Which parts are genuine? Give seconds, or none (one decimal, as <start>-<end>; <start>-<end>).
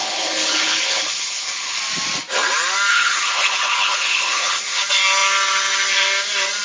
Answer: 1.8-2.9; 4.8-6.6